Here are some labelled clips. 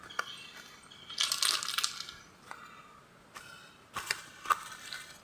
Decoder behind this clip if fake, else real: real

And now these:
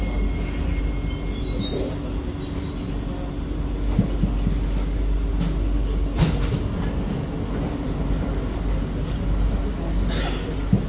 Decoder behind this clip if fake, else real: real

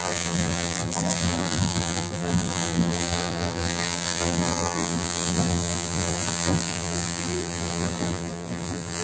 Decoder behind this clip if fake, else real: fake, vocoder, BigVGAN v2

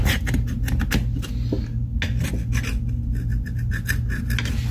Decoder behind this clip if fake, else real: real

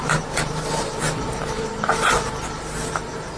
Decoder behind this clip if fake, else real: real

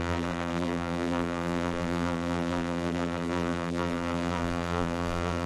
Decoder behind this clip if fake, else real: fake, vocoder, BigVGAN v2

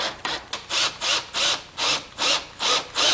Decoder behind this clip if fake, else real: real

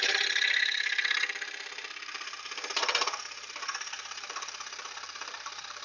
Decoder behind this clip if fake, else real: fake, vocoder, BigVGAN v2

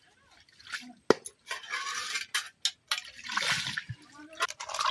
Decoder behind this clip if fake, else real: real